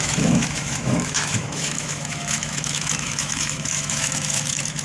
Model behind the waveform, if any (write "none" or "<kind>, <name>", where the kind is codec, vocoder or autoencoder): autoencoder, DAC-VAE